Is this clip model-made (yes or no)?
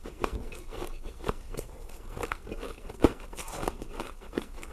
yes